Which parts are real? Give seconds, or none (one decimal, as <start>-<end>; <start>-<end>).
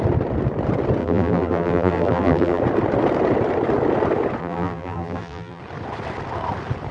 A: 0.0-1.0; 2.6-4.4; 5.6-6.9